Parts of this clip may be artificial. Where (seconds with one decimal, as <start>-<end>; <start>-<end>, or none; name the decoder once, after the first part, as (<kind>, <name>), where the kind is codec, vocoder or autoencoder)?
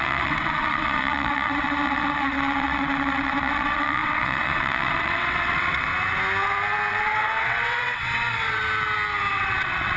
0.0-5.9 (vocoder, WaveNeXt); 6.9-8.6; 9.3-10.0